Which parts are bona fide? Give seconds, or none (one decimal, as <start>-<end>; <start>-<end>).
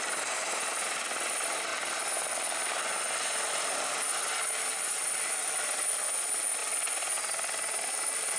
1.7-2.3; 6.6-7.2